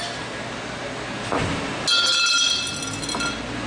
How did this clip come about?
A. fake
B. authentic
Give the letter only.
B